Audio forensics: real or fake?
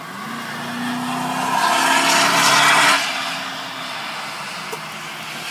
real